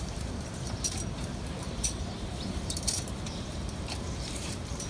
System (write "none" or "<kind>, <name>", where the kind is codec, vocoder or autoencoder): vocoder, BigVGAN v2